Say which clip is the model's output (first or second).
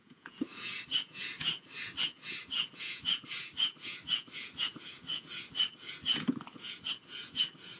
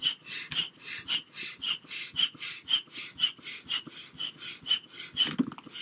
first